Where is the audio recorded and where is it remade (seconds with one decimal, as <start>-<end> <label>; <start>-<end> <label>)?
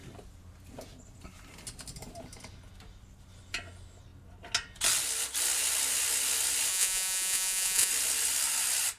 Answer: 0.0-6.7 recorded; 6.7-7.9 remade; 7.9-9.0 recorded